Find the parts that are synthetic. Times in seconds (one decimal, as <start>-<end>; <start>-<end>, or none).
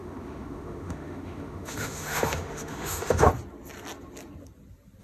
0.0-3.3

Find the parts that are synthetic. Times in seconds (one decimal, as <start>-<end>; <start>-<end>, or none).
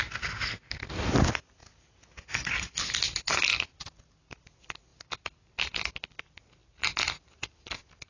none